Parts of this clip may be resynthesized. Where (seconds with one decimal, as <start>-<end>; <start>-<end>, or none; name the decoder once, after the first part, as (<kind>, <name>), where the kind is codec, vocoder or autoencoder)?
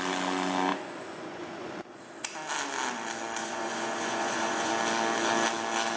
0.7-2.0 (vocoder, Vocos); 3.4-4.7